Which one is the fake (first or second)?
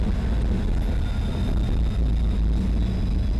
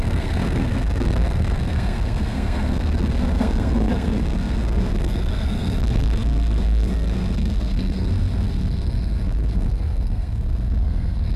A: second